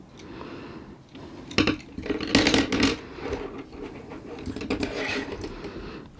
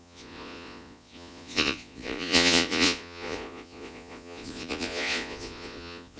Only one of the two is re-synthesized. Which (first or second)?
second